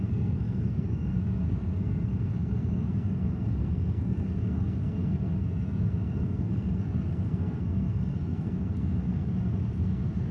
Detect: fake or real fake